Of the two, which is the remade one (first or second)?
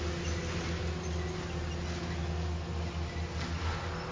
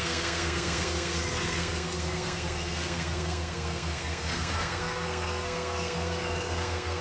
second